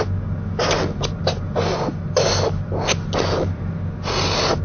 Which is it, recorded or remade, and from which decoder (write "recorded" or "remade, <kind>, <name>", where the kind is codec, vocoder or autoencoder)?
recorded